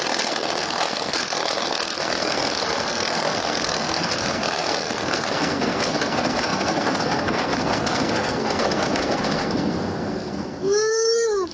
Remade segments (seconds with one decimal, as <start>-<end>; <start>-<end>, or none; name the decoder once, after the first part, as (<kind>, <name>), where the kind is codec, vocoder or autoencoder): 0.0-11.5 (codec, SNAC)